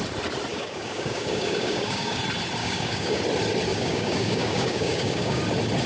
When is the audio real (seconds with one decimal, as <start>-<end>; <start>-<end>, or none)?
0.0-0.5; 2.2-2.6; 3.2-3.7; 5.4-5.9